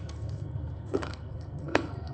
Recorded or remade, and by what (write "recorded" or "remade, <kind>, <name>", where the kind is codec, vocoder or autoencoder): remade, codec, SNAC